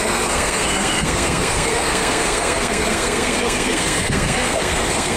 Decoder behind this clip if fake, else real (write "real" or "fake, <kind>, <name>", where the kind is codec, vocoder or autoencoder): fake, codec, SNAC